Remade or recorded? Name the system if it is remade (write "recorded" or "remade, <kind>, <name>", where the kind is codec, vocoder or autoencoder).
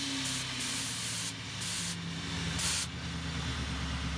recorded